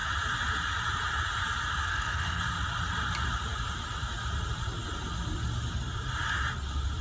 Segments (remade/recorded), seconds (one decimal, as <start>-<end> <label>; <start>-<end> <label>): 0.0-1.9 recorded; 1.9-2.4 remade; 2.4-7.0 recorded